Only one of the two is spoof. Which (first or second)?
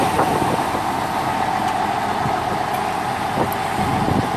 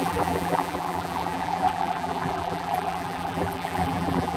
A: second